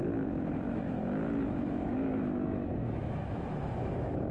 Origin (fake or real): fake